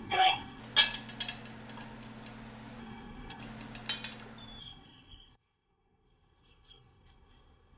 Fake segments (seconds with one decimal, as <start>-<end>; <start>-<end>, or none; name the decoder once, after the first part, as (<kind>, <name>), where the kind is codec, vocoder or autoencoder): 0.0-0.6 (codec, SNAC); 2.8-3.4; 4.6-7.8